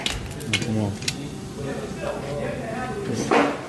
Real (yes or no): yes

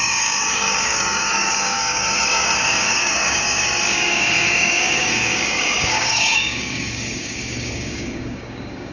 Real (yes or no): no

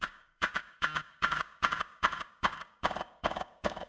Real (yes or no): no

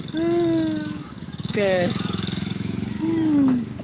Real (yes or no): no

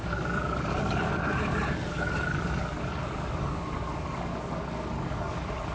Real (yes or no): no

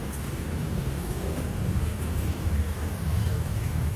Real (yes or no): no